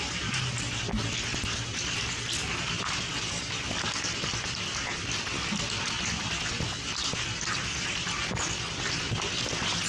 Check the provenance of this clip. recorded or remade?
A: recorded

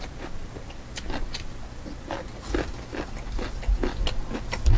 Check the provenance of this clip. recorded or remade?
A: recorded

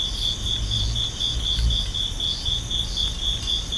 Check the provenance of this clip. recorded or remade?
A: recorded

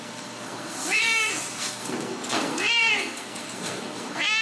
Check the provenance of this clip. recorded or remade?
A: remade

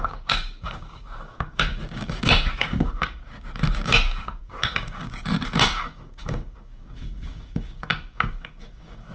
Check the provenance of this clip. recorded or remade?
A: remade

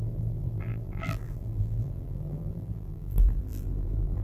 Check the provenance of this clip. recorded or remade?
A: remade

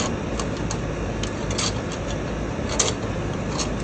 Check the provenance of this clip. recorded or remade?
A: recorded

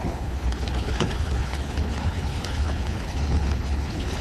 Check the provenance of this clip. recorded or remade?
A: remade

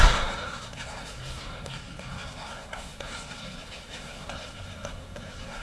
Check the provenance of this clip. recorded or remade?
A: remade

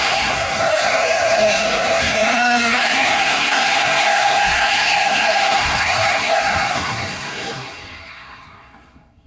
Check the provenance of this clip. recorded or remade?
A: remade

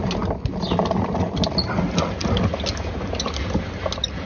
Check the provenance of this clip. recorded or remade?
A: recorded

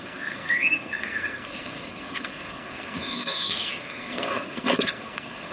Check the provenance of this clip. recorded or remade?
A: remade